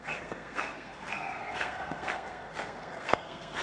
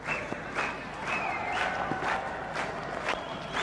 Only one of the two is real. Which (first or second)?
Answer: second